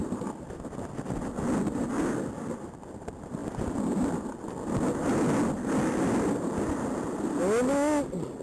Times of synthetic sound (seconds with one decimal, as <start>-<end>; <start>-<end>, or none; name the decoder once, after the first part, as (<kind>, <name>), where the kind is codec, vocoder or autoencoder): none